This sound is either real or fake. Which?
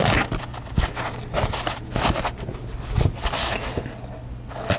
real